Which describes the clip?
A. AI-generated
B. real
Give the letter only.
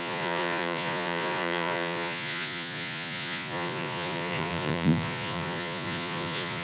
A